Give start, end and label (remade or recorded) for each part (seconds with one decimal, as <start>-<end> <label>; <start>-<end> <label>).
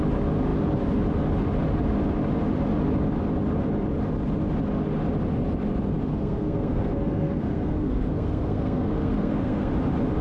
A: 0.0-6.1 recorded; 6.1-9.7 remade; 9.7-10.2 recorded